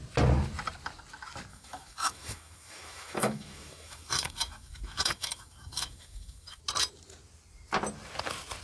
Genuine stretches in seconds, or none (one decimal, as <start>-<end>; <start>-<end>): 0.0-1.5; 6.6-8.6